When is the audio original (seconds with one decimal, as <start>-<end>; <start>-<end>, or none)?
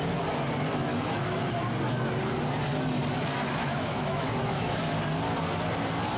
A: 0.0-0.9; 1.4-3.6; 4.8-6.2